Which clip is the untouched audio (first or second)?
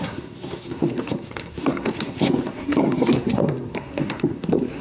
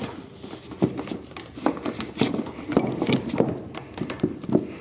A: second